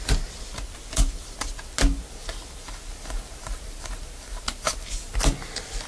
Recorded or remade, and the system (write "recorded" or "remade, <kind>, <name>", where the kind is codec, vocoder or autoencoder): recorded